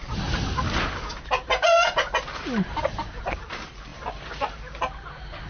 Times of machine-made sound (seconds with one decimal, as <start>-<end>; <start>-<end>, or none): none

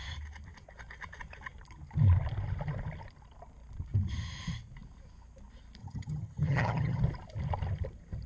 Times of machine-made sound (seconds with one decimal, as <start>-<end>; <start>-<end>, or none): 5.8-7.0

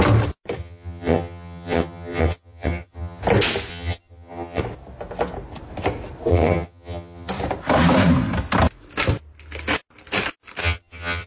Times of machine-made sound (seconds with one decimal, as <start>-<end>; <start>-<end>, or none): 0.6-3.2; 3.7-4.6; 6.3-7.3; 10.6-11.3

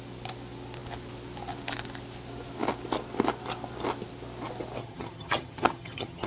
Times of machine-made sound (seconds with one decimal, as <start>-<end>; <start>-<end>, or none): 4.8-6.3

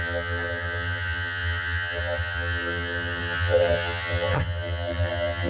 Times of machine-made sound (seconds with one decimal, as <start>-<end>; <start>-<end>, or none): 0.0-5.5

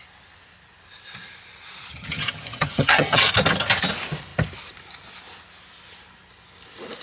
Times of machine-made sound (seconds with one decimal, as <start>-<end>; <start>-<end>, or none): 1.9-3.2